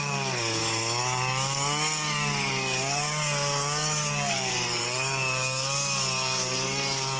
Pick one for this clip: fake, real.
fake